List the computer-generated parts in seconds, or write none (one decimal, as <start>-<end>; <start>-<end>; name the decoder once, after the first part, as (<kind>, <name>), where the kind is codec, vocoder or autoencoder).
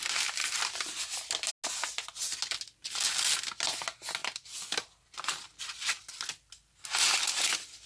0.4-1.5 (vocoder, BigVGAN v2); 4.2-6.5